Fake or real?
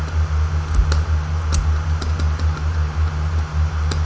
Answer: real